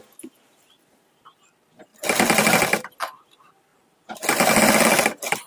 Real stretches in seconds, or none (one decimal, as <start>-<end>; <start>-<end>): 0.0-5.5